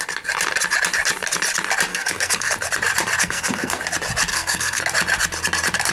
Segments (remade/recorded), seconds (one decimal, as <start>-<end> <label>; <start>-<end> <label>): 0.0-1.9 recorded; 1.9-2.5 remade; 2.5-3.2 recorded; 3.2-3.8 remade; 3.8-4.3 recorded; 4.3-4.8 remade; 4.8-5.9 recorded